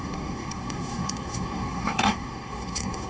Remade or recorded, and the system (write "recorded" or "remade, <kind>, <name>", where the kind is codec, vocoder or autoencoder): remade, codec, SNAC